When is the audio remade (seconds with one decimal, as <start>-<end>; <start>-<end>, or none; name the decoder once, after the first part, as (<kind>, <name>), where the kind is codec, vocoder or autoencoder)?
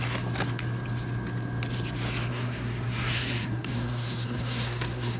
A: 2.3-5.2 (codec, SNAC)